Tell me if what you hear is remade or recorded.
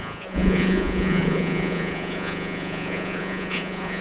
remade